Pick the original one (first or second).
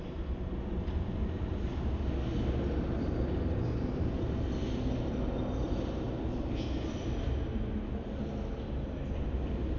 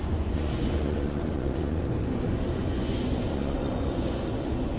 first